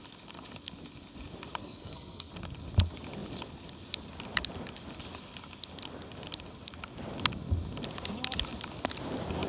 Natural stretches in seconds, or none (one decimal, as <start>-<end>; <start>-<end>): 0.0-1.6; 2.3-9.5